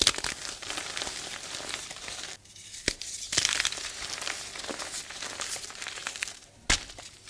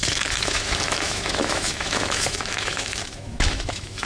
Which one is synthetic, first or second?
second